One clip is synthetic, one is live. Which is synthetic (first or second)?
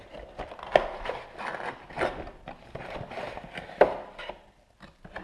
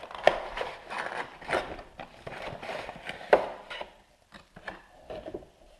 second